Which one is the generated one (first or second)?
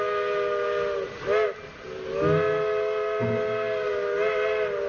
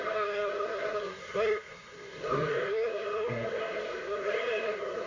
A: second